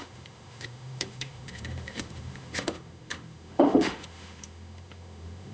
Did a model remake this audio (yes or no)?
yes